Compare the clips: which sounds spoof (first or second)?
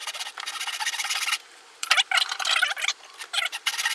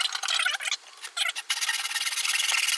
first